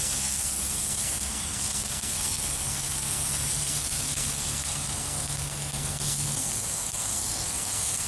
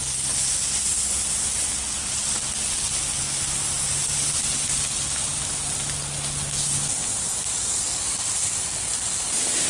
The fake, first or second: first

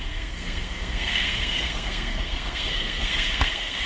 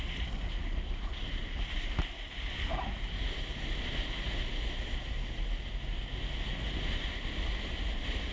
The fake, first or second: first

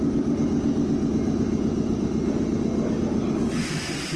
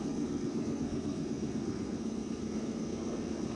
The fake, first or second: second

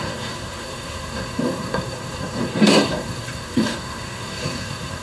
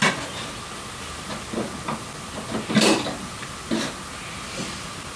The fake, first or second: first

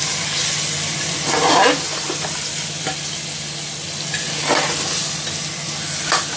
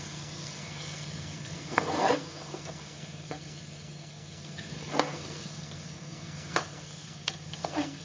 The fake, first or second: second